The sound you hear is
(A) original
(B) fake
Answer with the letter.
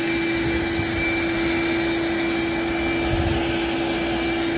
A